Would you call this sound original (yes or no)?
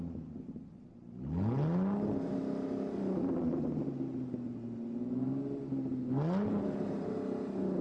yes